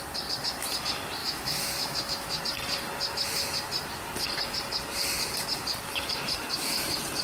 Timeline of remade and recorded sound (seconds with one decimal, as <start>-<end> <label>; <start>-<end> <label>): 0.0-1.2 recorded; 1.2-2.4 remade; 2.4-7.2 recorded